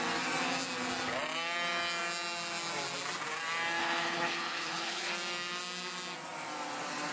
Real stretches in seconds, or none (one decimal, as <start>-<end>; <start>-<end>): 0.0-3.8; 5.1-7.1

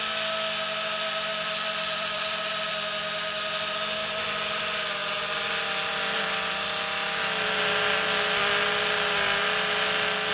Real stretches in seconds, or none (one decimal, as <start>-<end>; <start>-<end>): 0.0-1.3; 2.7-4.0; 4.6-5.0; 6.2-10.3

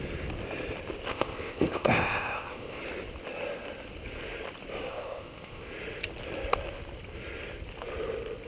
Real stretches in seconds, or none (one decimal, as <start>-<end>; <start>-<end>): 0.0-1.1; 2.8-4.9; 5.7-8.5

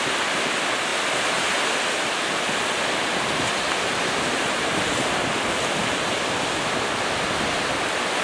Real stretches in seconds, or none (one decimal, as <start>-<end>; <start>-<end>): 0.0-8.2

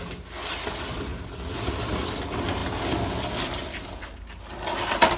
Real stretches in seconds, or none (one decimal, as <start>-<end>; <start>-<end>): 0.0-5.2

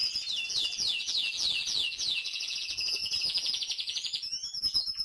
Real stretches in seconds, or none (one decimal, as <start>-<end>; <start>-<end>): 0.0-0.5